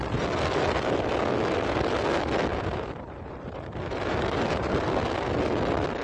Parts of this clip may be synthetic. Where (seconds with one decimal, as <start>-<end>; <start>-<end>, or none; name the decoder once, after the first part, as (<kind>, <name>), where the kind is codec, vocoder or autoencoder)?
2.5-4.7 (vocoder, BigVGAN v2)